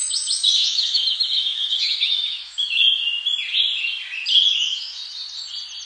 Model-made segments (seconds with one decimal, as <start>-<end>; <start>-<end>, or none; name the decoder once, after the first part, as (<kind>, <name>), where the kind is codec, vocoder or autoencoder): 0.0-2.8 (autoencoder, DAC-VAE); 4.5-5.0